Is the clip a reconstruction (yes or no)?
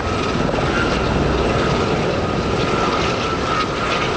no